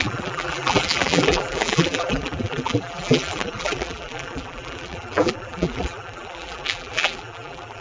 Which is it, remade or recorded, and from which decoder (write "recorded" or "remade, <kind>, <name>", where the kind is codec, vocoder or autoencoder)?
remade, vocoder, BigVGAN v2